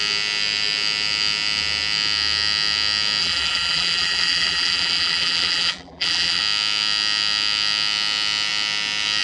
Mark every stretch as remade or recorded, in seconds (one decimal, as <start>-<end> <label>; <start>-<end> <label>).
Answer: 0.0-3.2 recorded; 3.2-6.4 remade; 6.4-9.2 recorded